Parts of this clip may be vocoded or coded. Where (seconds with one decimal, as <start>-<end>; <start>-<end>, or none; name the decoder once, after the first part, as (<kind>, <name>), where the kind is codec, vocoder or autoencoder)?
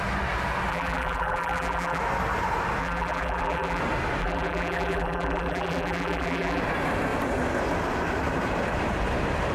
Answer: 0.7-2.0 (vocoder, BigVGAN v2); 2.8-3.8; 4.2-6.6